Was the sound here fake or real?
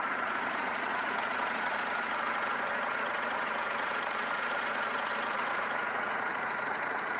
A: fake